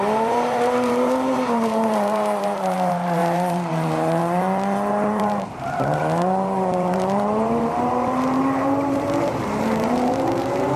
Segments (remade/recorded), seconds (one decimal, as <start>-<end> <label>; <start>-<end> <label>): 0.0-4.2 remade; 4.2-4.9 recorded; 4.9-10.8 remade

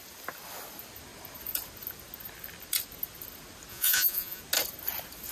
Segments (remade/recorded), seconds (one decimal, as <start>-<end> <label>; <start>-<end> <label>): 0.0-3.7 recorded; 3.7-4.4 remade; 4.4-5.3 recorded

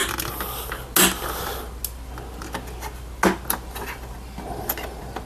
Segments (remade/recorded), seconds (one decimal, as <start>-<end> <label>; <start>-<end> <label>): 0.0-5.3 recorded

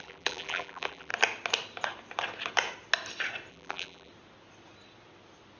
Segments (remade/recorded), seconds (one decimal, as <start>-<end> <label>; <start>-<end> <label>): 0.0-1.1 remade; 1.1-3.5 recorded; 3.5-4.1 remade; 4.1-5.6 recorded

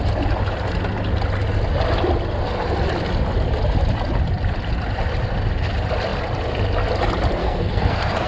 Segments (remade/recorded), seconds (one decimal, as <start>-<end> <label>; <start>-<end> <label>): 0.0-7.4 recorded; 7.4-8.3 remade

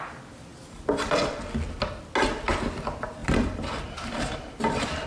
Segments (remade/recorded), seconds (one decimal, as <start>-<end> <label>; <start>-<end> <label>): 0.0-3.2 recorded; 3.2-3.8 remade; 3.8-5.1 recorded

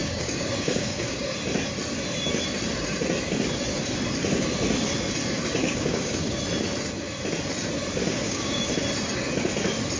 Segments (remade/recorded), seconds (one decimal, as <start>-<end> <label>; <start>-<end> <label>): 0.0-1.2 remade; 1.2-5.6 recorded; 5.6-6.4 remade; 6.4-8.0 recorded; 8.0-8.7 remade; 8.7-10.0 recorded